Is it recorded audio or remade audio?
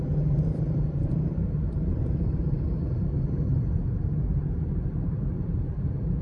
remade